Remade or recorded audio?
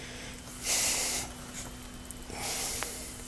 recorded